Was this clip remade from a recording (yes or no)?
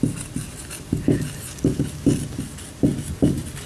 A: no